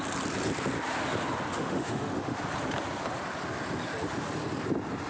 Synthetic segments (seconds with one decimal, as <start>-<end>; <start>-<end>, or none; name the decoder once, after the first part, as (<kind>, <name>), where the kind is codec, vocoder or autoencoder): 1.5-2.4 (autoencoder, DAC-VAE)